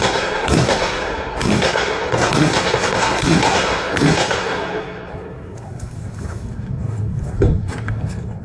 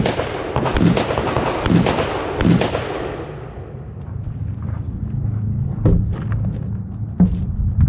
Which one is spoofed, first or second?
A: first